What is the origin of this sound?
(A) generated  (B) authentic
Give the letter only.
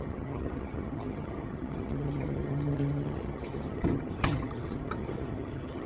A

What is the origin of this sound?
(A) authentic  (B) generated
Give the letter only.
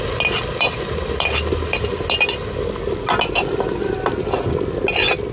A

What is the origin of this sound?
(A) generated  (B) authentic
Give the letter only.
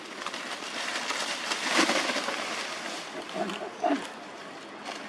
B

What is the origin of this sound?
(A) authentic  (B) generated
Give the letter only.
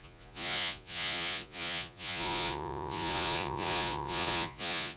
B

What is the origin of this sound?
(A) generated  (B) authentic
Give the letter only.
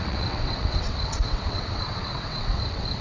A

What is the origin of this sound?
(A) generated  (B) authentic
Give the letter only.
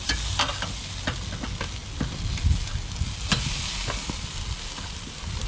B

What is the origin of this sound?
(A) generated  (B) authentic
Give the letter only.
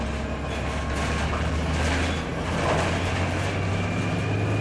B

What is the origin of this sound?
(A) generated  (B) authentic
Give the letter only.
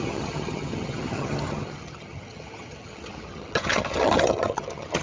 A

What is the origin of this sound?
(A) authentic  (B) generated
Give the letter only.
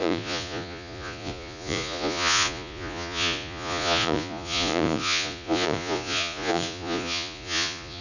B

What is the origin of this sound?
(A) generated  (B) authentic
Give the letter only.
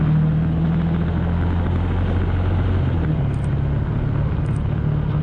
B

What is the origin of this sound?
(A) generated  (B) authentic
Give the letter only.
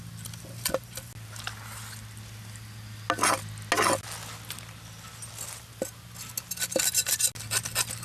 B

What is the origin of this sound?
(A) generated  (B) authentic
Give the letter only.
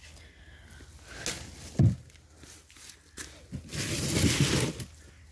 B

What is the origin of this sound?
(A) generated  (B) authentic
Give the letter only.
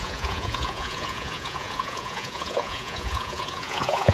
A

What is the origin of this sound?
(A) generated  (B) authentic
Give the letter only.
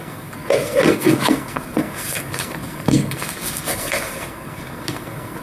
A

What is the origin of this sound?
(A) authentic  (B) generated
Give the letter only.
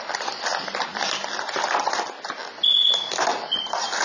A